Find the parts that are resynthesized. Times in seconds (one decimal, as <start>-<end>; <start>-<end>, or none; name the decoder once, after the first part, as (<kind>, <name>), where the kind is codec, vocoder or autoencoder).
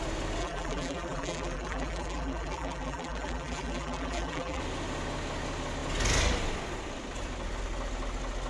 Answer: 0.4-4.6 (vocoder, BigVGAN v2)